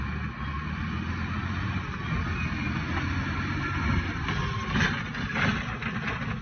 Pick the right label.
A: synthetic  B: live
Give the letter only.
B